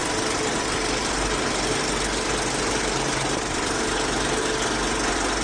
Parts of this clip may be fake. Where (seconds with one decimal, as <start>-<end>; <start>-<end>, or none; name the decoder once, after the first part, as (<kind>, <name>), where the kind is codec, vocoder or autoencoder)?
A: none